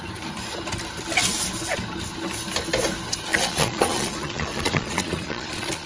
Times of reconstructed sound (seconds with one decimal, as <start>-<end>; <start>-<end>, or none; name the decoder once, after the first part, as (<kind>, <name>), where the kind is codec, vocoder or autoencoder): 3.3-5.9 (vocoder, Vocos)